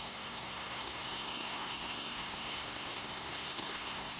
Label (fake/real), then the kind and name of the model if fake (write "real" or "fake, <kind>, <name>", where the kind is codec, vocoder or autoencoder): fake, codec, SNAC